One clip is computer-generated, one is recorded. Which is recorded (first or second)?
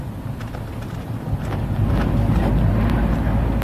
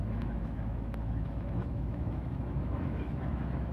first